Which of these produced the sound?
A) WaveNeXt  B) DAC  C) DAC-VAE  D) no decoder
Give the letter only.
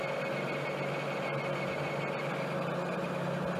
D